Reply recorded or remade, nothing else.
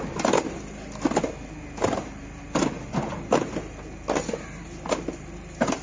recorded